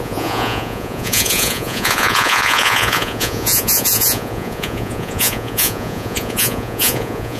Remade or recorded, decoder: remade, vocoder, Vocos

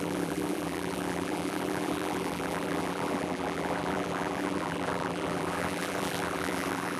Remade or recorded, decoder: remade, vocoder, BigVGAN v2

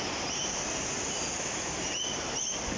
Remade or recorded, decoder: recorded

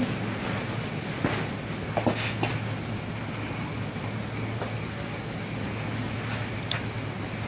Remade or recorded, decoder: recorded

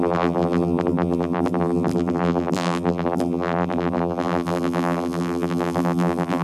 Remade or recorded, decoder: remade, vocoder, BigVGAN v2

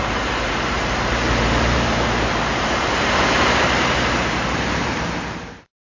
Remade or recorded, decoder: remade, vocoder, BigVGAN v2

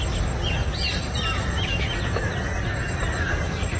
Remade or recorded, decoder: recorded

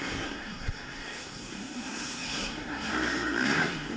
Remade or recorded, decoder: remade, codec, SNAC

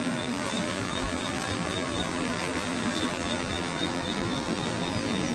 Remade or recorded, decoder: remade, vocoder, BigVGAN v2